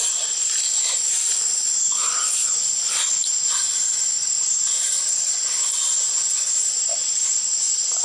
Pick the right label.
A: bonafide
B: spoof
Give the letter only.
A